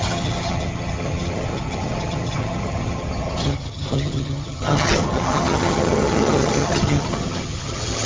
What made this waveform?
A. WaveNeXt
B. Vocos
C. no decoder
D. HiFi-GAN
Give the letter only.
D